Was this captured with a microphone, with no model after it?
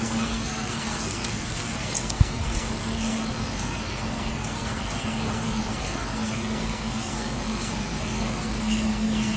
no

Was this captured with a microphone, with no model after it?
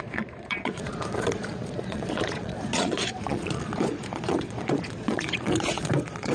no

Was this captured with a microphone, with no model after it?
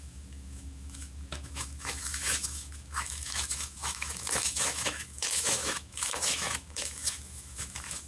no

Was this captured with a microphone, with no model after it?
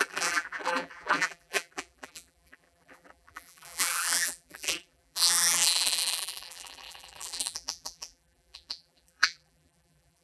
no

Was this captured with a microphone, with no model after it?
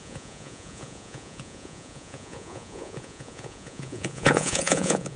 no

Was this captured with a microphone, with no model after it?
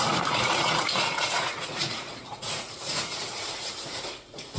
no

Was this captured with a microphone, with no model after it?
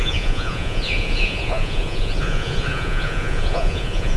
no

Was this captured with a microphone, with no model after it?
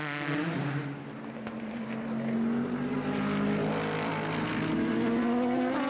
yes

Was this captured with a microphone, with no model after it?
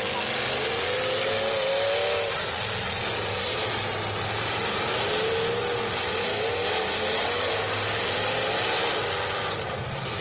yes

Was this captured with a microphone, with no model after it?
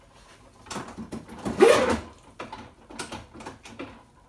yes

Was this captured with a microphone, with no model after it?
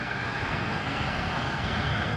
no